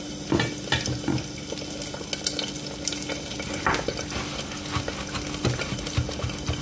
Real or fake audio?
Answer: real